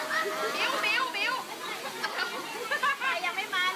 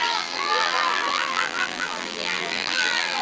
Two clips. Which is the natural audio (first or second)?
first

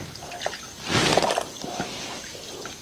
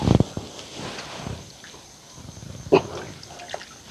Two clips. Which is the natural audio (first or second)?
first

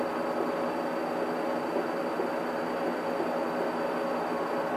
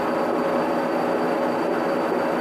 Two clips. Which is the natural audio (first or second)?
first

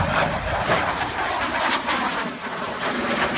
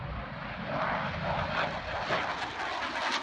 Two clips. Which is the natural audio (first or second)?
second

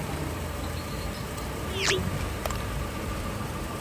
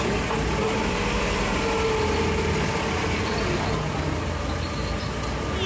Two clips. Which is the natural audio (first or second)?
second